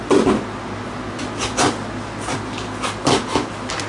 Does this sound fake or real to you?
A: real